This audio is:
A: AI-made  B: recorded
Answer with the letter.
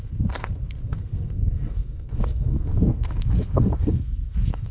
A